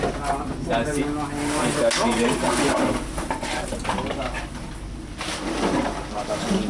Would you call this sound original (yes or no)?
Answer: yes